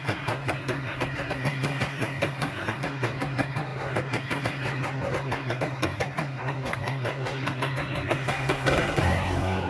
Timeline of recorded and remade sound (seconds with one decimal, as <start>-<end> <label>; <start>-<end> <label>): 0.0-9.7 remade